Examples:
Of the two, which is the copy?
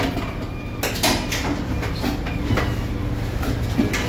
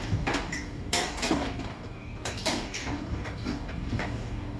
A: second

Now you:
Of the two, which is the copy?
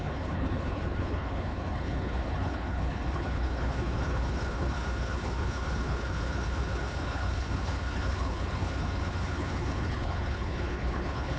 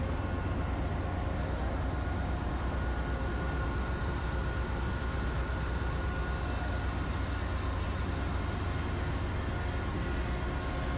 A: first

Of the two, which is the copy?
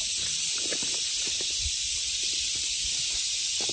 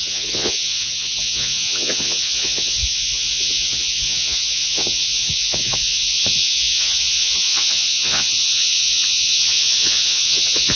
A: second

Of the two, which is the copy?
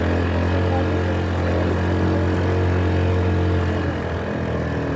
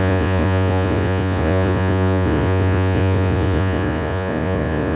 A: second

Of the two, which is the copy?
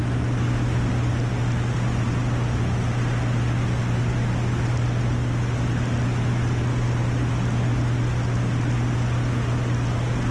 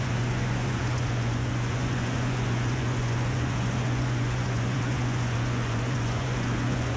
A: second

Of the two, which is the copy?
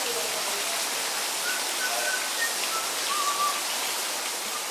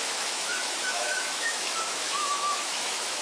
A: second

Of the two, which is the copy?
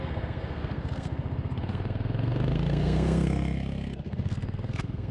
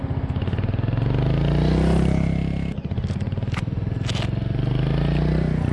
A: first